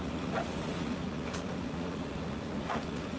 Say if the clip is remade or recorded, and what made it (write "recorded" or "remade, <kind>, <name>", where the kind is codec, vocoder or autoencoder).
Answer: remade, vocoder, Vocos